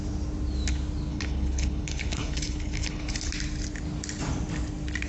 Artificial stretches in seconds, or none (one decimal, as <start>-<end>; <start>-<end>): 1.1-3.3